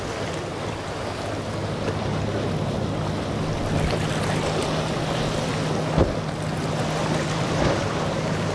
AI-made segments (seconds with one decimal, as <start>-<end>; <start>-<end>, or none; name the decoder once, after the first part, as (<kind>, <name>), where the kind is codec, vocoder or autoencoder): none